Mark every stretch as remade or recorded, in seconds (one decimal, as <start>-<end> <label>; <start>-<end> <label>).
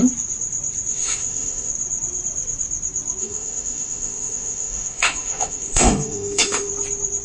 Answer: 0.0-0.9 recorded; 0.9-1.7 remade; 1.7-3.2 recorded; 3.2-6.7 remade; 6.7-7.2 recorded